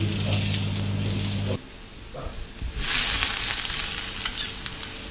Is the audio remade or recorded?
recorded